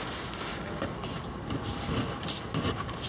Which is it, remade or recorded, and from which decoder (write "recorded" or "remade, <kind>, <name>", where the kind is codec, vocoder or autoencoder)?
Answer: recorded